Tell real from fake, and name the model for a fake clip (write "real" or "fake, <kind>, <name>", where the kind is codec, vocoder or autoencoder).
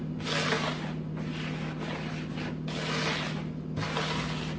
real